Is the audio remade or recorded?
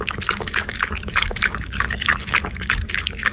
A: remade